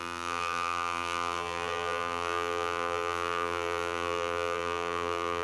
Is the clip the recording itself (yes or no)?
no